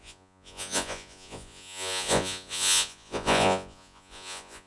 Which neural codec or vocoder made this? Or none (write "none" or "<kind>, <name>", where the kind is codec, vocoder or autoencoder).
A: vocoder, Vocos